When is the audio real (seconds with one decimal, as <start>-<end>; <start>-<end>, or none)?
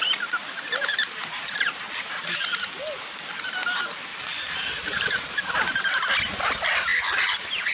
0.0-0.9; 2.0-4.1; 6.1-7.7